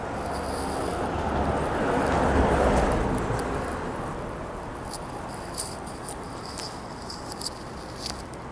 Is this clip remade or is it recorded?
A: recorded